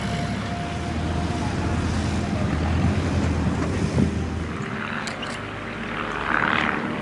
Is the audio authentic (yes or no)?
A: yes